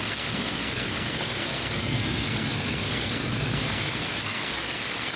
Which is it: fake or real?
fake